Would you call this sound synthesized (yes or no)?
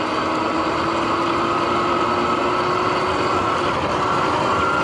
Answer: no